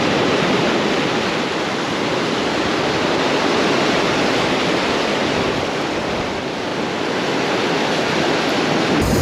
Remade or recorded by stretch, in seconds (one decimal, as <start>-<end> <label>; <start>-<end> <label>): 0.0-9.2 recorded